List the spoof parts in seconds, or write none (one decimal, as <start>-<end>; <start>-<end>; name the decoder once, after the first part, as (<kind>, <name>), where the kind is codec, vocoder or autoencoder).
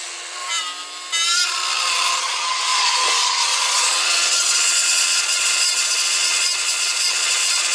0.0-0.4 (vocoder, Vocos); 2.2-7.7